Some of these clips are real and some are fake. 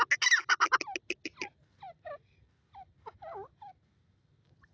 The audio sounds real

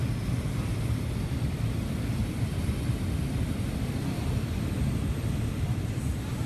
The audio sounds fake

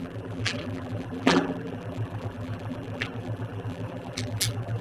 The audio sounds fake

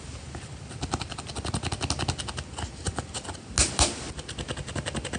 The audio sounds real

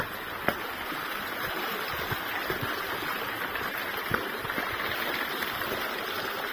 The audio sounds real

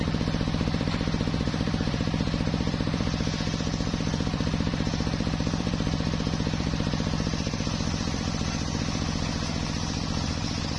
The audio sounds fake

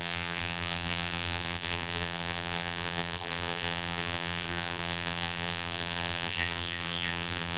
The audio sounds fake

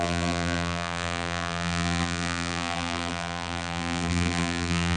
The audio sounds fake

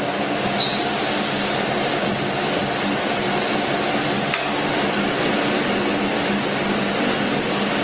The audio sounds real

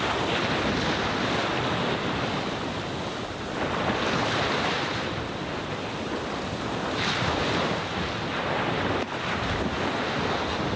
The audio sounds fake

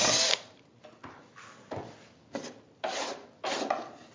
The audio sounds real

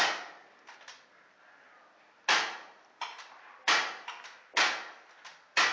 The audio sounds real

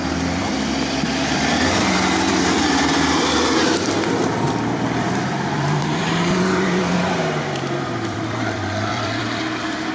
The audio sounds fake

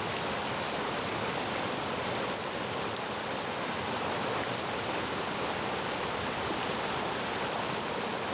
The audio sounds fake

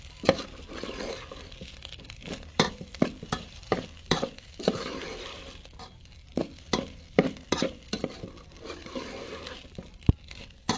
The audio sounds fake